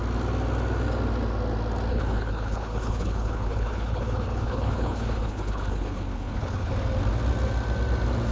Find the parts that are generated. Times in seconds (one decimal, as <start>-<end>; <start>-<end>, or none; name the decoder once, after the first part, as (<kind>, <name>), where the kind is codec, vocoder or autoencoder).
1.9-6.7 (codec, HILCodec)